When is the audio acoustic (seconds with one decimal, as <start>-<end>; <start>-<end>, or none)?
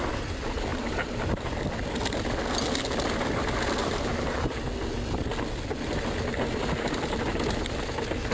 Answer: 0.0-0.7; 1.6-3.8; 4.5-8.3